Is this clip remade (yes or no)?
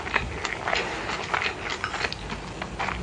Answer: no